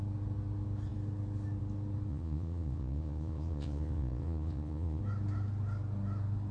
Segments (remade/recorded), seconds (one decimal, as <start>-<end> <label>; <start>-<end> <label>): 0.0-2.1 recorded; 2.1-5.0 remade; 5.0-6.5 recorded